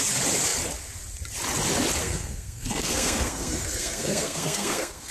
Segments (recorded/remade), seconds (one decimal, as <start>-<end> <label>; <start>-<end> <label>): 0.0-2.0 recorded; 2.0-5.1 remade